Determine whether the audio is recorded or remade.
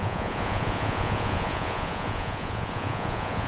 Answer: remade